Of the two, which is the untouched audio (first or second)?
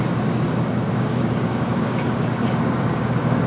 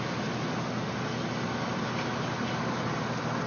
second